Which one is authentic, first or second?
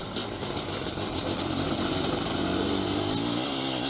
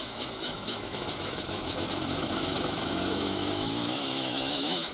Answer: first